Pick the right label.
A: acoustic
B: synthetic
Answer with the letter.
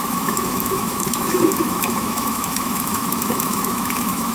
B